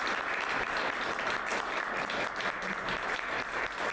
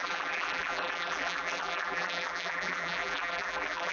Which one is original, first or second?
first